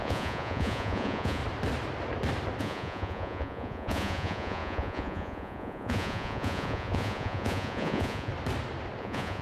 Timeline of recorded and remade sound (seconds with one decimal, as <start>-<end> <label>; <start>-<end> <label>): 0.0-1.4 remade; 1.4-2.6 recorded; 2.6-8.3 remade; 8.3-9.0 recorded; 9.0-9.4 remade